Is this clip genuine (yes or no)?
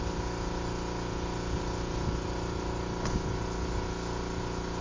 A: yes